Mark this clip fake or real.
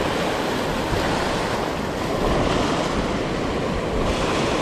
real